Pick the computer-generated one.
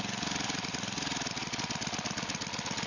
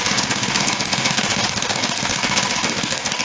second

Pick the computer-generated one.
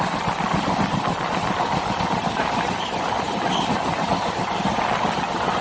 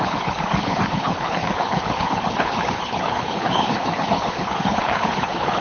second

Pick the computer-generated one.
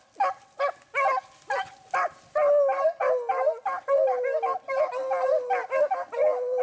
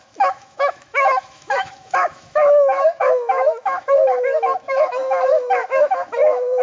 second